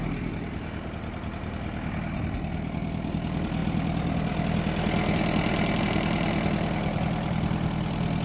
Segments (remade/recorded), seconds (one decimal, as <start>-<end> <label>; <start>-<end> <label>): 0.0-8.2 recorded